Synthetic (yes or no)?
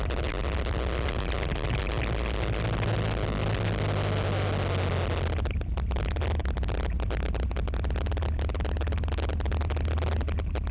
no